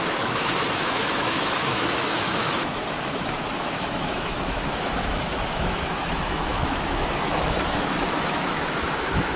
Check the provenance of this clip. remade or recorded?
remade